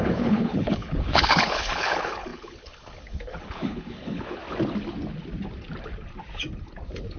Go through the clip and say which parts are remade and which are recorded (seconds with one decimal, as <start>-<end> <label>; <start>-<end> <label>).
0.0-4.4 remade; 4.4-7.2 recorded